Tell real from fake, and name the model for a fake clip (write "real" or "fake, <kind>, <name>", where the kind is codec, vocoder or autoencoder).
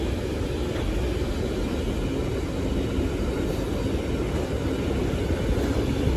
real